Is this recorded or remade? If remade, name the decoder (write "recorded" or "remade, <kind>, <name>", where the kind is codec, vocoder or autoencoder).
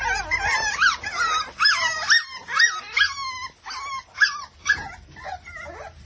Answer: recorded